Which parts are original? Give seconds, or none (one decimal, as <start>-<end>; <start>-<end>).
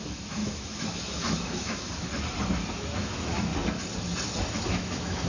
2.1-2.7; 3.5-4.5